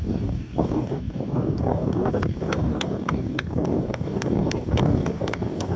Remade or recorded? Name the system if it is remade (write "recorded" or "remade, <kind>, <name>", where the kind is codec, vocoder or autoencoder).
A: remade, codec, DAC